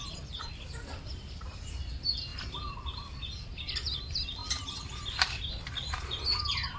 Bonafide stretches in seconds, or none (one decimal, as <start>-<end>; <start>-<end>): none